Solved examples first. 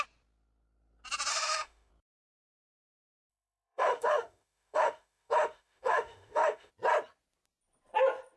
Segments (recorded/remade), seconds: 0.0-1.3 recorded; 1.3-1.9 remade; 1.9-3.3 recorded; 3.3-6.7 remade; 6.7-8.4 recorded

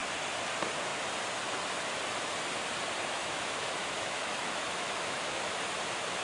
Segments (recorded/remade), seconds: 0.0-3.2 recorded; 3.2-5.6 remade; 5.6-6.2 recorded

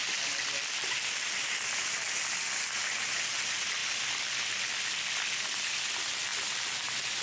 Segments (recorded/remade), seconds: 0.0-7.2 recorded

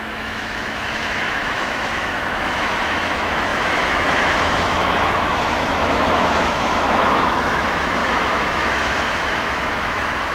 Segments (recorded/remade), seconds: 0.0-10.3 remade

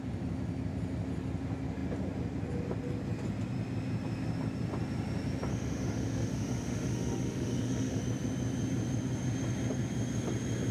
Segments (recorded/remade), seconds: 0.0-5.5 recorded; 5.5-8.0 remade; 8.0-10.7 recorded

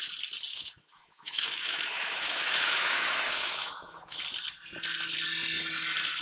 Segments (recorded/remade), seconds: 0.0-0.5 recorded; 0.5-4.2 remade; 4.2-6.2 recorded

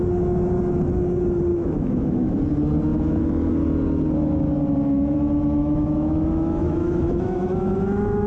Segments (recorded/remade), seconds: 0.0-1.5 recorded; 1.5-2.3 remade; 2.3-2.9 recorded; 2.9-3.5 remade; 3.5-5.6 recorded; 5.6-8.3 remade